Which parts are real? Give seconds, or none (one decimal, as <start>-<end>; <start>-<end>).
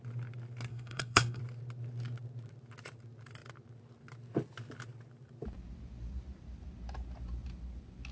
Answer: 0.0-0.7; 1.4-8.1